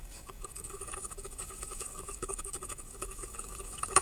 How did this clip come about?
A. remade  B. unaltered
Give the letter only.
A